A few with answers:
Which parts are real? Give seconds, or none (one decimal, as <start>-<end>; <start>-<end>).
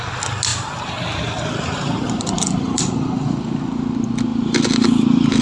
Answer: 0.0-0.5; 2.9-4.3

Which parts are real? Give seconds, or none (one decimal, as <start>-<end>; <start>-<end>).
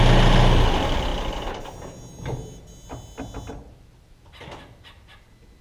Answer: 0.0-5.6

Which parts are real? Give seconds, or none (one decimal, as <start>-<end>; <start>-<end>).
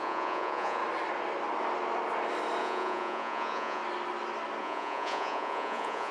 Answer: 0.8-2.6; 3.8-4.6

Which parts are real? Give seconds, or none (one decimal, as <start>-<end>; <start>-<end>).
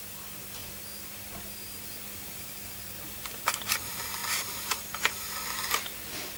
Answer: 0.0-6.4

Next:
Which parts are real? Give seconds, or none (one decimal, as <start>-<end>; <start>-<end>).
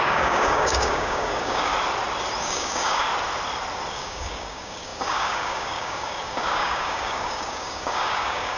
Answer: 1.7-2.4; 3.1-3.9